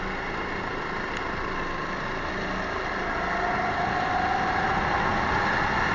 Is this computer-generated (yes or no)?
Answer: no